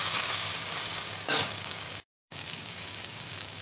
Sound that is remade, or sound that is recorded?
remade